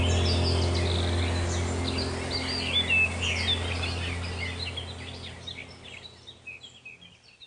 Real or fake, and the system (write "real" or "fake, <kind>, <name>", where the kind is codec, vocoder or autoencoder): real